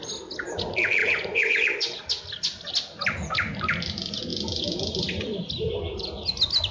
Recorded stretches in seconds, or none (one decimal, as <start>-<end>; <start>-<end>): 0.0-1.0; 2.0-6.7

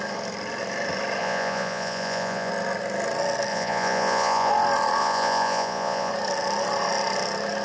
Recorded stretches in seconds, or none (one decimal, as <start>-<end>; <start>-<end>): 0.0-1.2; 2.5-3.5; 4.5-5.0; 6.1-7.6

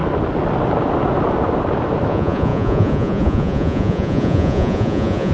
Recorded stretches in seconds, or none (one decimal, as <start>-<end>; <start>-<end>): 0.0-2.1

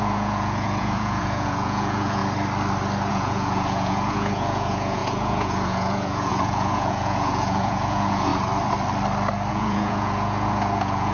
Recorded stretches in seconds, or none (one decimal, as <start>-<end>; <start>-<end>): 2.2-3.1; 8.3-9.5

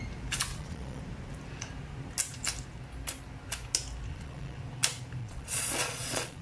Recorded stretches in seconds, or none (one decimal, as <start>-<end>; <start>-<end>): 0.0-0.5; 1.0-4.1; 4.6-5.2

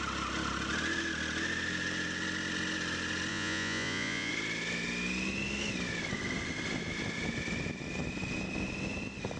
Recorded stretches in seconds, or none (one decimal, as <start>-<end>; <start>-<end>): 0.0-3.3; 4.3-9.4

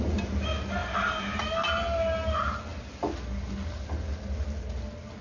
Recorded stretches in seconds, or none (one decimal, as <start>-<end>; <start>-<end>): 0.0-5.2